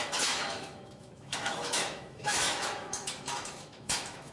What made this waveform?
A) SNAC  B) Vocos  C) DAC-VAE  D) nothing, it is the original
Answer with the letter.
C